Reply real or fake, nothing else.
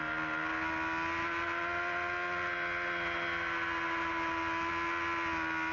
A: real